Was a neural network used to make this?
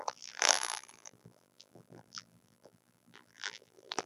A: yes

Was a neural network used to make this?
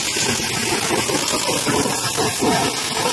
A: no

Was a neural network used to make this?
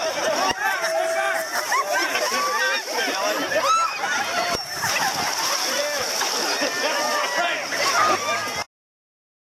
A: no